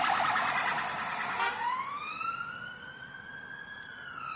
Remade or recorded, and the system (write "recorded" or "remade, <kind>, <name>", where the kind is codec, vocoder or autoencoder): recorded